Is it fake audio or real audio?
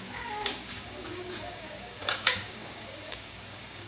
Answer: fake